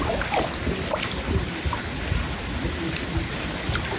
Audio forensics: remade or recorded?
recorded